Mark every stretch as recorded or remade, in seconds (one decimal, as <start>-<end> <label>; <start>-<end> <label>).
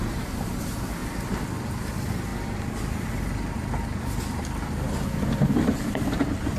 0.0-6.6 recorded